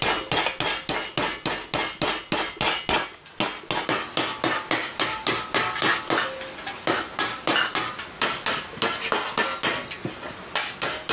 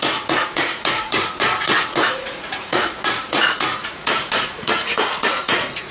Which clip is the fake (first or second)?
second